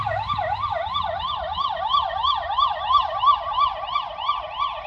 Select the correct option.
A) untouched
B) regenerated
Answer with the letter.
A